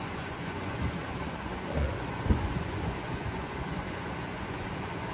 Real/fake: fake